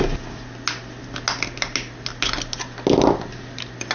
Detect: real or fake real